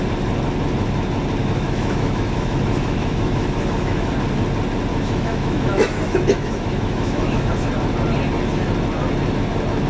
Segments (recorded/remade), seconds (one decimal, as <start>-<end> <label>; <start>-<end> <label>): 0.0-1.4 recorded; 1.4-4.1 remade; 4.1-4.9 recorded; 4.9-7.5 remade; 7.5-9.9 recorded

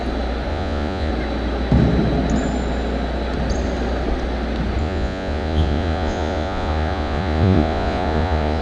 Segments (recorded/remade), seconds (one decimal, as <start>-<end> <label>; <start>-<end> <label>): 0.0-0.5 recorded; 0.5-1.1 remade; 1.1-4.8 recorded; 4.8-8.6 remade

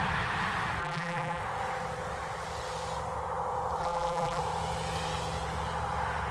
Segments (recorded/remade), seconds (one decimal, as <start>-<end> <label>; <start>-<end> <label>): 0.0-0.8 recorded; 0.8-1.4 remade; 1.4-3.8 recorded; 3.8-4.4 remade; 4.4-6.3 recorded

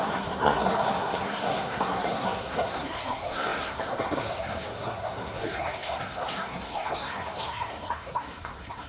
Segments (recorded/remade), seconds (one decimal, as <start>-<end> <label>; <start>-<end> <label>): 0.0-8.9 remade